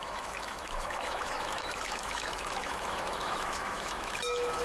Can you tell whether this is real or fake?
fake